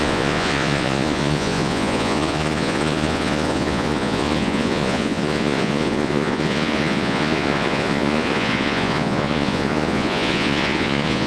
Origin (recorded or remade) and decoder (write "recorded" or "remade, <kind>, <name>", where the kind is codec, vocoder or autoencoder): remade, vocoder, Vocos